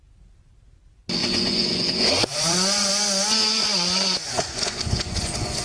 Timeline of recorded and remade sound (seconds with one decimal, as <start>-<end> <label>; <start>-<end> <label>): 0.0-1.2 recorded; 1.2-2.9 remade; 2.9-3.6 recorded; 3.6-5.6 remade